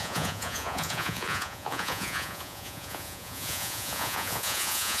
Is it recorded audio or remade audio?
remade